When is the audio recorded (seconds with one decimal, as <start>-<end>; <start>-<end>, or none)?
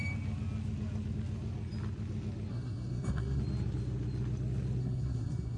0.0-2.5; 3.4-4.8